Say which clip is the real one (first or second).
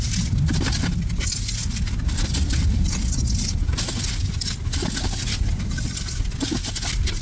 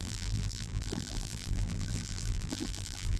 first